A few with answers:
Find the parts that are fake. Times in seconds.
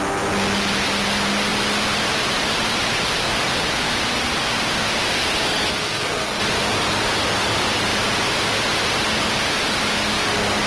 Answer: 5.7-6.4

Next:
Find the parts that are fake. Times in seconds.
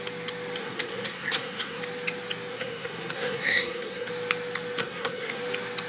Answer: 0.6-1.8; 2.5-4.1; 4.8-5.4